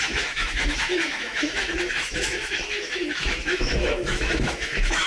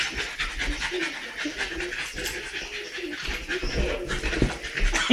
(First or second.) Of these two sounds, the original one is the second